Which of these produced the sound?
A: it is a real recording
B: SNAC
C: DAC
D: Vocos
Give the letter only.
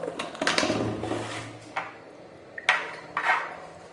A